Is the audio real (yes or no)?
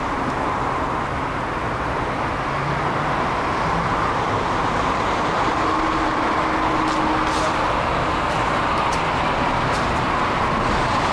yes